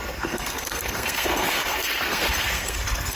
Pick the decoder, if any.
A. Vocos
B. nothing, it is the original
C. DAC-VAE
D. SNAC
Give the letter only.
D